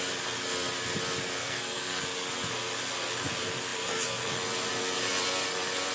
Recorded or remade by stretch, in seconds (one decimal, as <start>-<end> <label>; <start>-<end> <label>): 0.0-1.4 recorded; 1.4-2.0 remade; 2.0-5.9 recorded